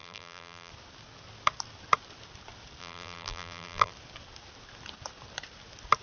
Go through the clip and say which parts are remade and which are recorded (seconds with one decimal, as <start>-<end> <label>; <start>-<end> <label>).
0.0-0.7 remade; 0.7-2.8 recorded; 2.8-3.9 remade; 3.9-6.0 recorded